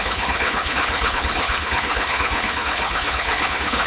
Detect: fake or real fake